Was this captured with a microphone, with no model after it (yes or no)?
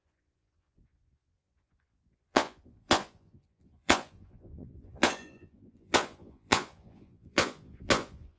no